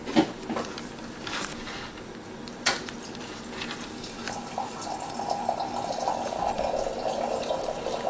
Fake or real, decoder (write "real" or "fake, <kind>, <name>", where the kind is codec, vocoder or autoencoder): real